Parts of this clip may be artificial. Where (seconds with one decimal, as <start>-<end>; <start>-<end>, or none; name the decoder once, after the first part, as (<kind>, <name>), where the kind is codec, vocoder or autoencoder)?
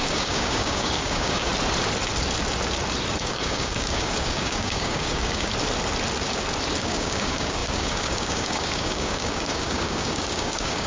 0.0-1.5 (codec, DAC); 3.2-5.5; 6.8-10.9